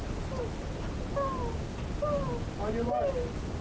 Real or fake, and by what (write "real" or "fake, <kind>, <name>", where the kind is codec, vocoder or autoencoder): real